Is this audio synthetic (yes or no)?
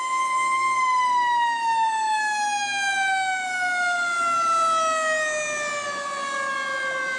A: no